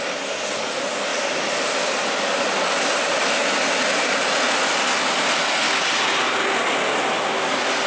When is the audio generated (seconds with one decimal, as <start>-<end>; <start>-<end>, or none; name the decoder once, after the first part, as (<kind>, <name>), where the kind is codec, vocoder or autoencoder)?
none